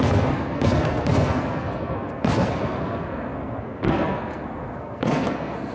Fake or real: fake